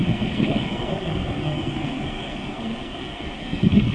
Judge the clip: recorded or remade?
remade